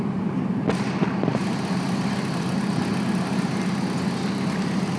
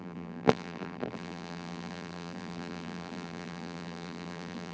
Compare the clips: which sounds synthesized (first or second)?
second